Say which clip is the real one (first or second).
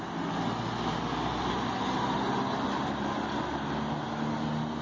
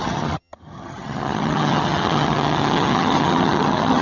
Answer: first